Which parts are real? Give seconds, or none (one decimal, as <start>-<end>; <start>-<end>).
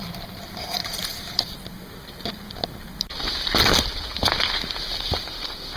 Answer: 1.1-4.6